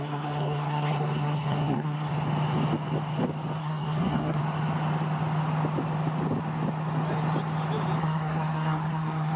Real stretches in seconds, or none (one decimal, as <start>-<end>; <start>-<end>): 2.1-3.6; 4.4-8.0